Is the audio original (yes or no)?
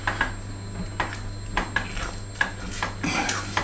yes